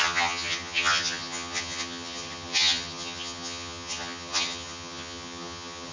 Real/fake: fake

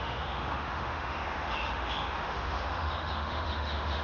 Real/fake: fake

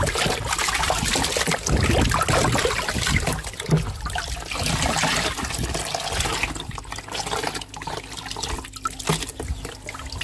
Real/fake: real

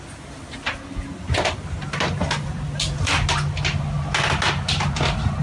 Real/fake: real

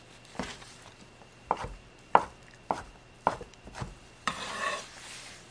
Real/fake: fake